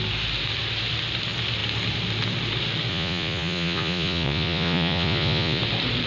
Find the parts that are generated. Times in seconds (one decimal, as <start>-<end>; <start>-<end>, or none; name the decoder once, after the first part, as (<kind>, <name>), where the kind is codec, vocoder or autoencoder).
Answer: 2.9-5.6 (vocoder, Vocos)